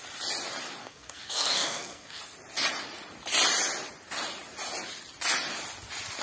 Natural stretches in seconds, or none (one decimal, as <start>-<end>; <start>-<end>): 0.0-0.8; 2.2-6.2